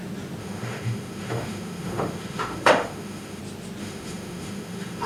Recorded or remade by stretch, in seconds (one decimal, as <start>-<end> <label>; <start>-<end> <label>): 0.0-0.4 recorded; 0.4-3.4 remade; 3.4-3.8 recorded; 3.8-5.1 remade